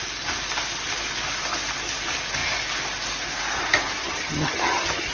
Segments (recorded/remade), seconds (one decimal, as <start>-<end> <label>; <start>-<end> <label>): 0.0-4.0 recorded; 4.0-5.1 remade